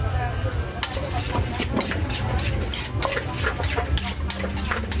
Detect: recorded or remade recorded